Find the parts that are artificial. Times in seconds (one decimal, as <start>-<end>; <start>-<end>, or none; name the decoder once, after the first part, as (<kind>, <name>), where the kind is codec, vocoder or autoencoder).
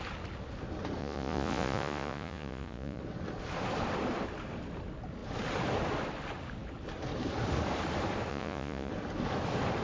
1.0-3.0 (vocoder, Vocos); 8.3-8.9